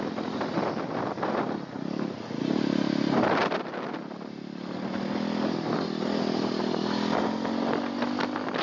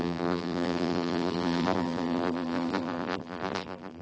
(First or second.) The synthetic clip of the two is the second